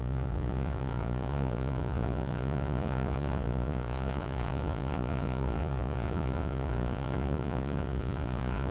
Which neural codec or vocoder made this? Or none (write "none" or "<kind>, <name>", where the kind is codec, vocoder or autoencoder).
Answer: vocoder, Vocos